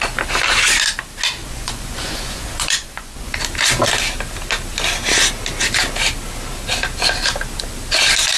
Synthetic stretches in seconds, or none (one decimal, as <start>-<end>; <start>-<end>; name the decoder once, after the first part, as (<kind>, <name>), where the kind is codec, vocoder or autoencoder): 1.4-3.4 (vocoder, Vocos)